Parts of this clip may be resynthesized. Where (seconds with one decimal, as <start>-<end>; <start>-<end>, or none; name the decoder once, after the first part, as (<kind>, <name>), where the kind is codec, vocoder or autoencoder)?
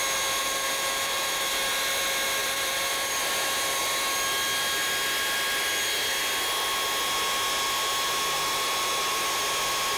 0.4-1.5 (vocoder, BigVGAN v2); 2.4-3.3